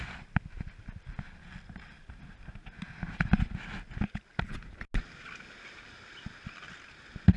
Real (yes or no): yes